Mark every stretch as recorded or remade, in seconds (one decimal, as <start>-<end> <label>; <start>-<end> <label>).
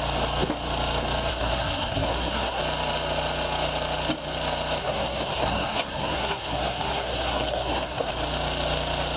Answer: 0.0-1.3 recorded; 1.3-2.6 remade; 2.6-4.8 recorded; 4.8-8.1 remade; 8.1-9.2 recorded